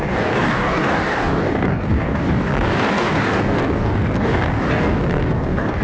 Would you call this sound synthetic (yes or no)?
yes